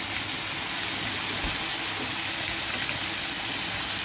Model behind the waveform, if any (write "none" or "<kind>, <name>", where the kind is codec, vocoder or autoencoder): none